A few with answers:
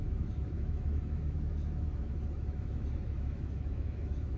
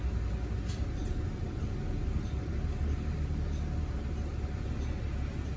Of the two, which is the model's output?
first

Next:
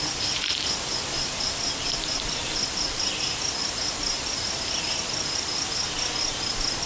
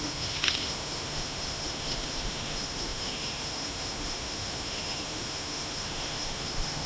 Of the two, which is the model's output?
second